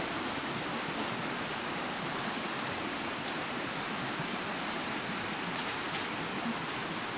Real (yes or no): yes